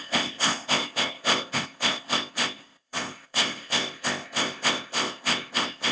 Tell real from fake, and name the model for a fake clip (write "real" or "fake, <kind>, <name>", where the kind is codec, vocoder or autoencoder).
fake, codec, ZipCodec